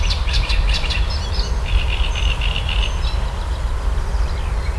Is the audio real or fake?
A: real